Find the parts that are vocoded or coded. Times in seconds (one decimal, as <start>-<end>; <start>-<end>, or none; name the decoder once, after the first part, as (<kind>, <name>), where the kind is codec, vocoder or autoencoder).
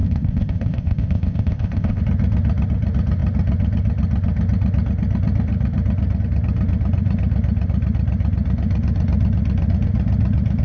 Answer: 0.0-2.0 (codec, ZipCodec)